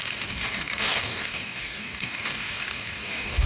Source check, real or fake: fake